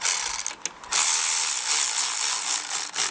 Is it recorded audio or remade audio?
recorded